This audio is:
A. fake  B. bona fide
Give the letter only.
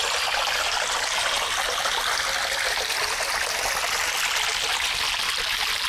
B